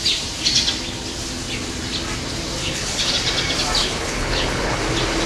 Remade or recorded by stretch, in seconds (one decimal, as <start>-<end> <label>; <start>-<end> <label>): 0.0-2.6 recorded; 2.6-3.1 remade; 3.1-3.8 recorded; 3.8-4.8 remade; 4.8-5.3 recorded